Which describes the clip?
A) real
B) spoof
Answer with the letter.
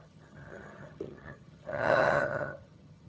B